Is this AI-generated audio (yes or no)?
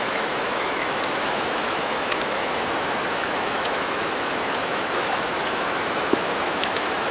yes